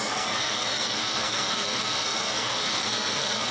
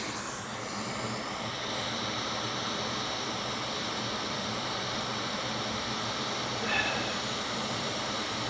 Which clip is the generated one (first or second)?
first